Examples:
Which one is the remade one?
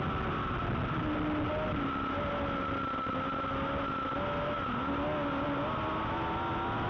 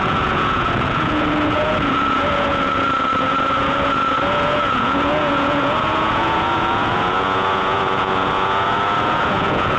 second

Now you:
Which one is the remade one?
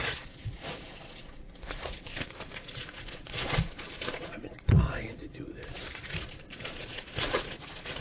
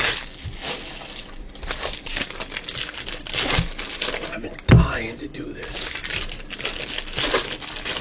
first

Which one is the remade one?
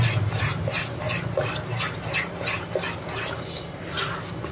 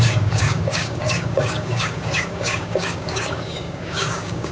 second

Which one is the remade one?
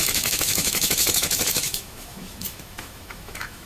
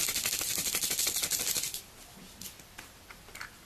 first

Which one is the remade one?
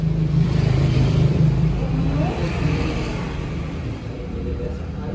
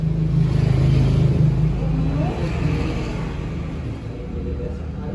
first